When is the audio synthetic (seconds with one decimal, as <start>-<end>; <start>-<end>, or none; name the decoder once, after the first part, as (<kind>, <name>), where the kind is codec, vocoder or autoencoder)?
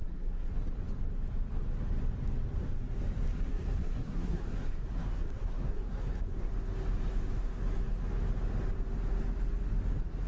0.0-0.5 (codec, SNAC); 3.3-6.5